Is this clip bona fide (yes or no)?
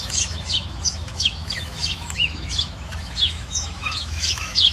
no